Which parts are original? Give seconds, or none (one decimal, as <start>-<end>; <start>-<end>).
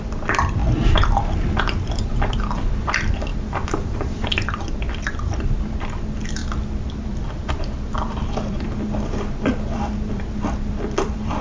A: none